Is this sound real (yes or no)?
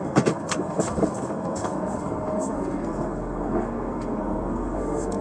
no